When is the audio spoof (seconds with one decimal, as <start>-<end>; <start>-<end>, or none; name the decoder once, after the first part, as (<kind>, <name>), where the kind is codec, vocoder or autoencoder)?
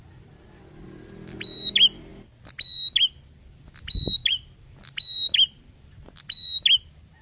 none